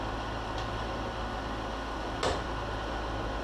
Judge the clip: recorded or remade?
recorded